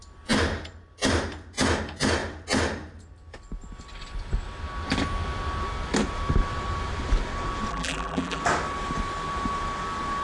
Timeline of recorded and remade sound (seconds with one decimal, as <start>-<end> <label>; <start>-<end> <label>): 0.0-7.7 recorded; 7.7-8.4 remade; 8.4-10.2 recorded